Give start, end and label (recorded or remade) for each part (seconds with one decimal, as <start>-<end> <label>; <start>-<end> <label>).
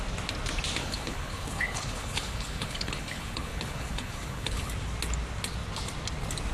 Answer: 0.0-0.8 recorded; 0.8-4.7 remade; 4.7-6.5 recorded